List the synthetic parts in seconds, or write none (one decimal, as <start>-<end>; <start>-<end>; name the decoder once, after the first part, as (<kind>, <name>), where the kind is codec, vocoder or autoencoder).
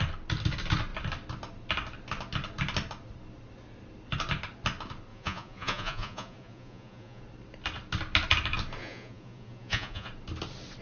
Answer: 5.1-7.2 (vocoder, Vocos); 8.8-10.1